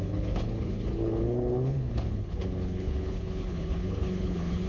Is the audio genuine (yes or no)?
no